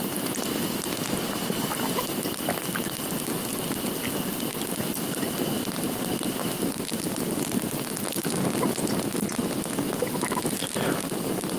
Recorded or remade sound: recorded